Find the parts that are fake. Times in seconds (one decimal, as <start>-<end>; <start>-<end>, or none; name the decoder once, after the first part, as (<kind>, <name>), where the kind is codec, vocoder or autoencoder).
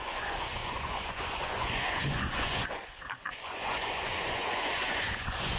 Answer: 0.0-5.6 (vocoder, Vocos)